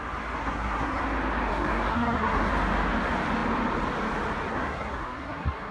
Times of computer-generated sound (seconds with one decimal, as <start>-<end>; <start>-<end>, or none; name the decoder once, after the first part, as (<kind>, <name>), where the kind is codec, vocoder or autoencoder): 0.4-1.0 (codec, SNAC); 1.5-2.5; 4.5-5.7